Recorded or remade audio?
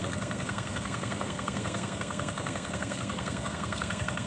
remade